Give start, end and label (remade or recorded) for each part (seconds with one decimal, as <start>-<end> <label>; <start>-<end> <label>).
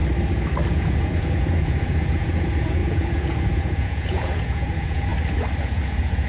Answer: 0.0-0.7 recorded; 0.7-5.1 remade; 5.1-5.6 recorded; 5.6-6.3 remade